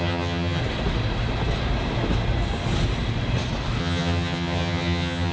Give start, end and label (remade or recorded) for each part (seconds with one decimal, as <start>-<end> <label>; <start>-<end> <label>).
0.0-0.6 remade; 0.6-3.8 recorded; 3.8-5.3 remade